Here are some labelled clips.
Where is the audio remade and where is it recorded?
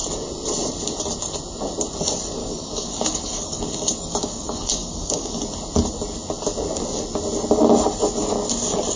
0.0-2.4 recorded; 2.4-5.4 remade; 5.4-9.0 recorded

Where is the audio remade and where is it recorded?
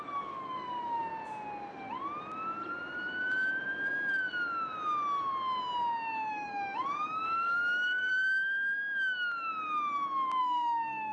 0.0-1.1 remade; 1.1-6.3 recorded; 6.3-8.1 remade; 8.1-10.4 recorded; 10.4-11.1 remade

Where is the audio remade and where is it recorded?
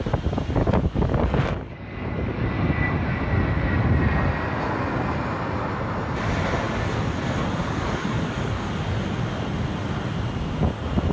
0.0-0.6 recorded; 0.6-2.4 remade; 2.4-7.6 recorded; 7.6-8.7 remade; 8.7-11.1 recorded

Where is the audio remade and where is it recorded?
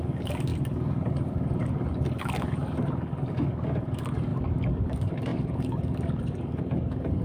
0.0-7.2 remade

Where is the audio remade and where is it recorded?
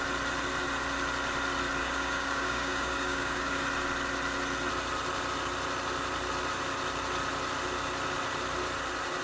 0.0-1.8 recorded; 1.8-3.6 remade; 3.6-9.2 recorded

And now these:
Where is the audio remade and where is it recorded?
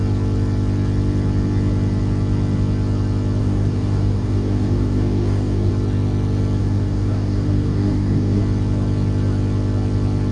0.0-3.4 recorded; 3.4-5.7 remade; 5.7-6.6 recorded; 6.6-8.4 remade; 8.4-10.3 recorded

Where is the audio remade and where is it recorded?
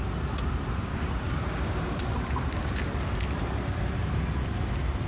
0.0-0.9 recorded; 0.9-1.8 remade; 1.8-5.1 recorded